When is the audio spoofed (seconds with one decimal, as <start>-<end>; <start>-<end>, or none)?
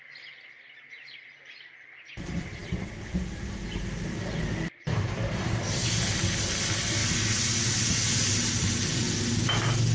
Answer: none